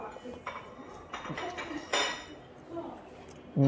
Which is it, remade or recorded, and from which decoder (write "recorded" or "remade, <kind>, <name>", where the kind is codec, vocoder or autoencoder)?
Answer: recorded